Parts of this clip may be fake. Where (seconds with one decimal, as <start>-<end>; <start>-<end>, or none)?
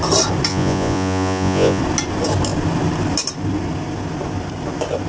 0.5-1.8